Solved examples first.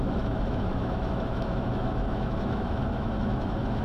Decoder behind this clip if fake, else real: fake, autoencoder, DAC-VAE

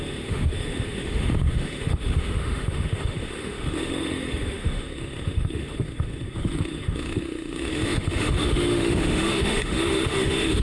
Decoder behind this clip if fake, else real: fake, autoencoder, DAC-VAE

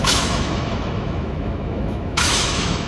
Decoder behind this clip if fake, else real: fake, autoencoder, DAC-VAE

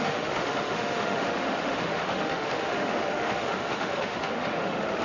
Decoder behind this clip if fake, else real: fake, autoencoder, DAC-VAE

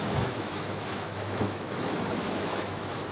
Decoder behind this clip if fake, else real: fake, autoencoder, DAC-VAE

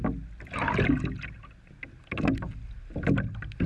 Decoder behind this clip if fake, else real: real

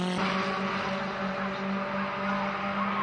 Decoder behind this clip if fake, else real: real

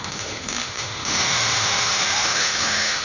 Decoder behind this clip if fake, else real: fake, autoencoder, DAC-VAE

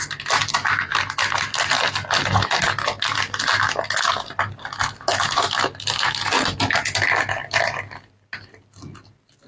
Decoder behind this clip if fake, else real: real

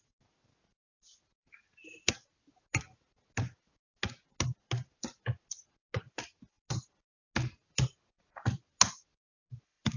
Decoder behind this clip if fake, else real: real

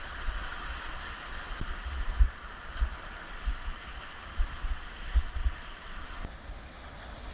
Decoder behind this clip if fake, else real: real